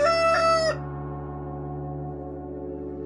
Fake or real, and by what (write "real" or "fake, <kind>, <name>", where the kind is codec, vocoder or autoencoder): real